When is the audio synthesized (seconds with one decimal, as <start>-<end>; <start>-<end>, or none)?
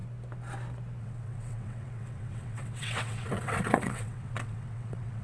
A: 1.0-5.2